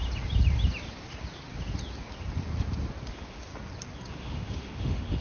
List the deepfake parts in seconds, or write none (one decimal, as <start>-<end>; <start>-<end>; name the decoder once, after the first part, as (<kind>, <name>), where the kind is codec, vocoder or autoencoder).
3.1-3.5 (autoencoder, DAC-VAE); 4.1-5.2